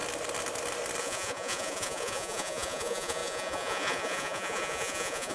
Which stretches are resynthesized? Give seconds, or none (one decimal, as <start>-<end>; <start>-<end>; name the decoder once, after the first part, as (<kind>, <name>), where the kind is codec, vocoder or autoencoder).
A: 1.0-5.3 (vocoder, Vocos)